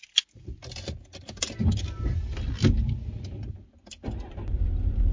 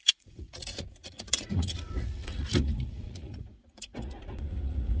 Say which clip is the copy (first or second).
second